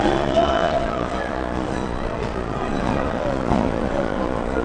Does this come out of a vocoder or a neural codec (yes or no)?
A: yes